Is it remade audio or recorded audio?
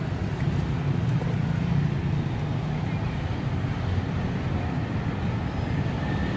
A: recorded